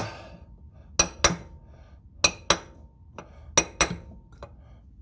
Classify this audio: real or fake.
real